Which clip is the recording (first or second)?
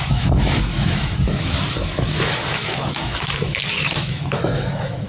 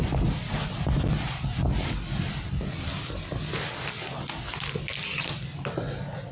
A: second